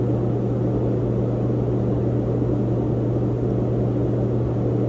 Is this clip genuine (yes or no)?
yes